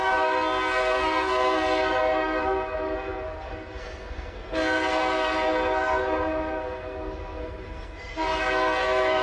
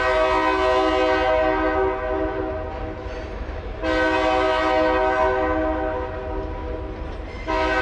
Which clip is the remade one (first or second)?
first